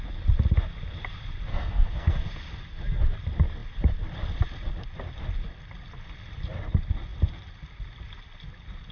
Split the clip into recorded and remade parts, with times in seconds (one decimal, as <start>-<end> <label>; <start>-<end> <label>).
0.0-1.5 recorded; 1.5-2.3 remade; 2.3-8.9 recorded